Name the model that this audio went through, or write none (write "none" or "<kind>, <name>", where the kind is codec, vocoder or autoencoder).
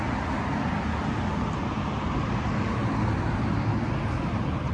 none